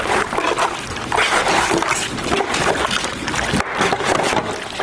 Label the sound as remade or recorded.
recorded